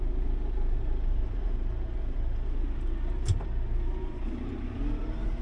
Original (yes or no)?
no